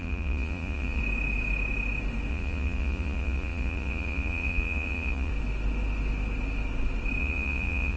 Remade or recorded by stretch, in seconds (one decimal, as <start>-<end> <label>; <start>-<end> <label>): 0.0-1.0 remade; 1.0-2.3 recorded; 2.3-5.3 remade; 5.3-7.2 recorded; 7.2-8.0 remade